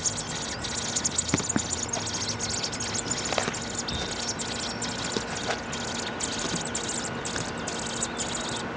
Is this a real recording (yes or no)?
yes